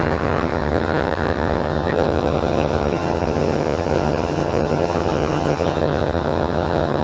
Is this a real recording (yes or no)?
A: no